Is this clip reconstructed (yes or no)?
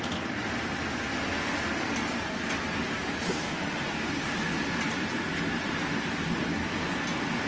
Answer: no